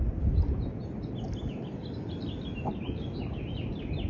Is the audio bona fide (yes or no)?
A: yes